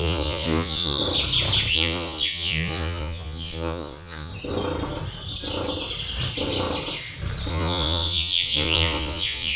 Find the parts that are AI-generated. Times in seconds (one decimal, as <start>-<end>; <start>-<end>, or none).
0.0-1.0; 1.7-4.3; 7.5-9.6